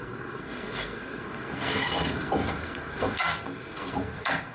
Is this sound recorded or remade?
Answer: remade